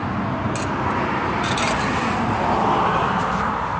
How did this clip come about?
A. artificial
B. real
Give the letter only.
B